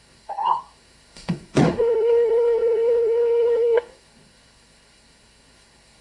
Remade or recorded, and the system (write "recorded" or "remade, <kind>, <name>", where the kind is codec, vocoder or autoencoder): remade, codec, SNAC